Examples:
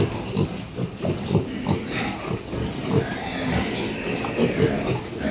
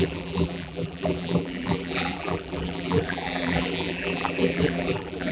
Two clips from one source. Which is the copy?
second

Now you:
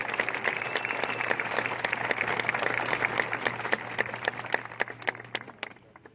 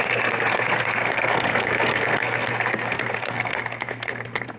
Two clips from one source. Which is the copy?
second